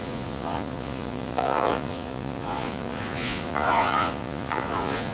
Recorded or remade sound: remade